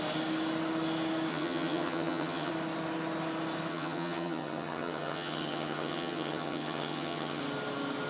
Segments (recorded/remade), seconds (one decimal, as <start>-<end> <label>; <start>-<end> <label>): 0.0-1.3 recorded; 1.3-2.5 remade; 2.5-3.7 recorded; 3.7-7.4 remade; 7.4-8.1 recorded